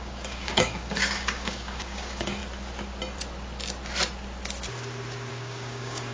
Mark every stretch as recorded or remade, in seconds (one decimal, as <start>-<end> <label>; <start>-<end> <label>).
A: 0.0-2.4 remade; 2.4-5.3 recorded; 5.3-6.1 remade